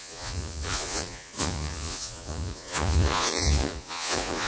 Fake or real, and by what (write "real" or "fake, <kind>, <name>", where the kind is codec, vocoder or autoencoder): fake, vocoder, Vocos